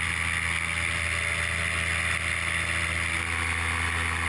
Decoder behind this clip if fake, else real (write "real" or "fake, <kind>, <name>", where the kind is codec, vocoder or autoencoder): real